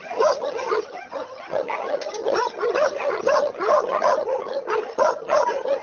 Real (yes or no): no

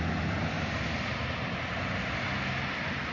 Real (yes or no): yes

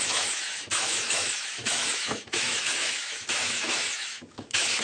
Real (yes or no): no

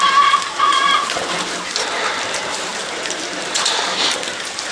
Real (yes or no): no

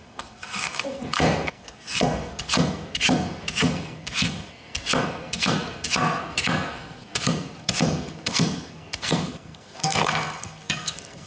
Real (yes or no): no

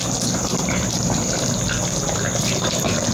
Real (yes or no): yes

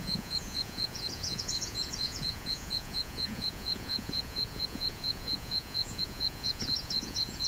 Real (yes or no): no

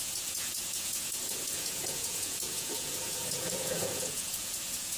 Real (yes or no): no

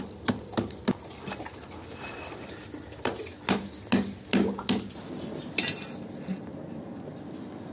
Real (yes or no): yes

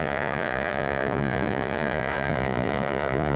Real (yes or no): no